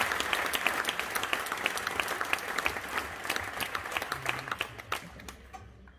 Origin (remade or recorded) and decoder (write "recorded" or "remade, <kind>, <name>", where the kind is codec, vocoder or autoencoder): recorded